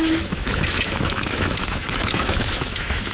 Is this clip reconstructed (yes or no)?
yes